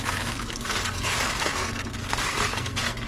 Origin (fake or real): fake